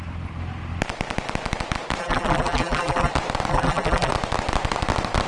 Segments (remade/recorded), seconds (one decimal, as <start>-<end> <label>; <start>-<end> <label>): 0.0-2.0 recorded; 2.0-3.1 remade; 3.1-3.5 recorded; 3.5-4.1 remade; 4.1-5.3 recorded